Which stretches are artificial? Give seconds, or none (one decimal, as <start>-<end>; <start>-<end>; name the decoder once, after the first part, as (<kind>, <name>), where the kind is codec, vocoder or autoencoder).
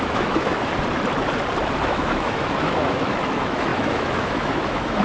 0.0-0.7 (autoencoder, DAC-VAE); 1.8-5.0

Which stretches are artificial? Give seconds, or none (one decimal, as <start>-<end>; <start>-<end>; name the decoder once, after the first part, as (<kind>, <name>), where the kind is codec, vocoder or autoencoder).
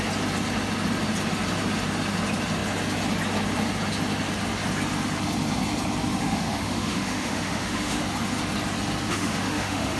6.2-8.0 (autoencoder, DAC-VAE); 9.1-10.0